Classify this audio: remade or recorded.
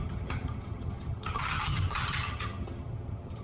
remade